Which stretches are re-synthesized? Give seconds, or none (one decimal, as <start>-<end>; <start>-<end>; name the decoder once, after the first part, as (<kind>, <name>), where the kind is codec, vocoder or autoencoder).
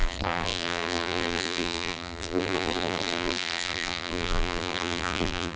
0.0-5.6 (vocoder, BigVGAN v2)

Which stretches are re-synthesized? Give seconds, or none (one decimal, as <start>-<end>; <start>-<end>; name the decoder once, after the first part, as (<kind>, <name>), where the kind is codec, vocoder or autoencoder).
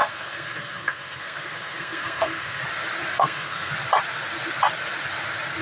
0.0-2.6 (codec, SNAC); 3.1-3.7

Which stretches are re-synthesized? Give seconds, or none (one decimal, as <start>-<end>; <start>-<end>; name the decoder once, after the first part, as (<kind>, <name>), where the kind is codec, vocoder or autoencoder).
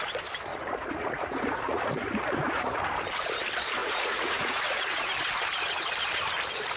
0.5-2.8 (vocoder, Vocos); 3.8-5.1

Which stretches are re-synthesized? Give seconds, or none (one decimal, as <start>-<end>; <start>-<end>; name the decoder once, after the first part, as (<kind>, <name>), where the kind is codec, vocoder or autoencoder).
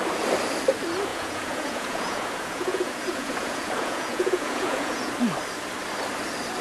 1.1-5.1 (vocoder, Vocos)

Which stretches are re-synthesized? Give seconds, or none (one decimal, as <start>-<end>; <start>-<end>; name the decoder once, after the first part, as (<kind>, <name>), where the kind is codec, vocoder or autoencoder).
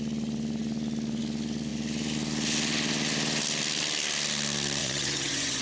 4.8-5.6 (vocoder, Vocos)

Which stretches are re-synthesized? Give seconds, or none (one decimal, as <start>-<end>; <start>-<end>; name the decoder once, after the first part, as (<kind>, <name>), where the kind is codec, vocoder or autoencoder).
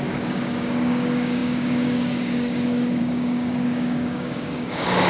0.0-5.1 (codec, DAC)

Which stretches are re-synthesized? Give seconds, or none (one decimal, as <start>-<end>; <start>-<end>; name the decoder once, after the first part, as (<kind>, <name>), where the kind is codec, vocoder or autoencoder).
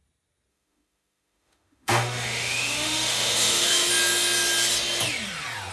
0.5-3.9 (autoencoder, DAC-VAE)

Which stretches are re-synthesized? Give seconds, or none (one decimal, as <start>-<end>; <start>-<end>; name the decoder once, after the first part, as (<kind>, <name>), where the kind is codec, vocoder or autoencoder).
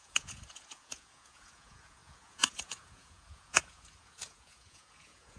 0.0-5.4 (vocoder, Vocos)